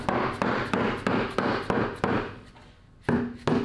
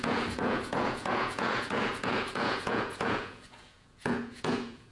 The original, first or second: first